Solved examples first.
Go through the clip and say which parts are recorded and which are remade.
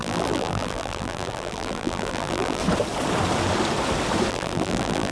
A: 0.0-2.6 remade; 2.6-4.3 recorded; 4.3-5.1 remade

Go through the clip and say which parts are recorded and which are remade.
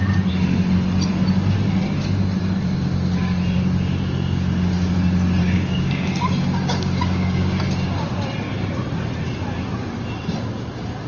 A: 0.0-5.4 recorded; 5.4-7.5 remade; 7.5-11.1 recorded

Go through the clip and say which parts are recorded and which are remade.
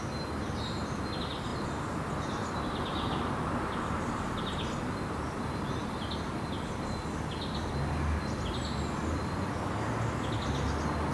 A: 0.0-11.1 recorded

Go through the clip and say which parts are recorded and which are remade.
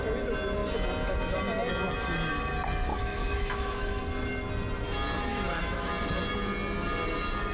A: 0.0-2.9 recorded; 2.9-4.0 remade; 4.0-5.3 recorded; 5.3-5.9 remade; 5.9-7.5 recorded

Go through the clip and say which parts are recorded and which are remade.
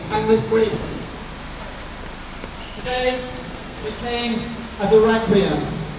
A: 0.0-1.1 remade; 1.1-2.8 recorded; 2.8-3.8 remade; 3.8-6.0 recorded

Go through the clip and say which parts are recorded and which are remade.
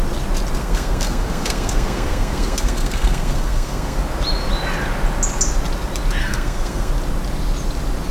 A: 0.0-0.6 recorded; 0.6-4.0 remade; 4.0-6.2 recorded; 6.2-6.9 remade; 6.9-8.1 recorded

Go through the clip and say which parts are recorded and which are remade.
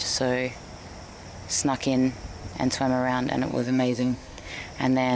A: 0.0-3.5 recorded; 3.5-4.5 remade; 4.5-5.2 recorded